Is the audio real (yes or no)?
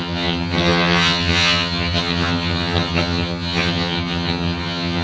no